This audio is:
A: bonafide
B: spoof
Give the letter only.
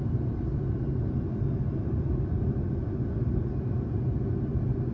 A